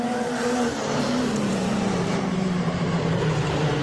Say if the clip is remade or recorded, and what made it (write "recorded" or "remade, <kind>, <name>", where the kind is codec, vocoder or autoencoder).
remade, vocoder, BigVGAN v2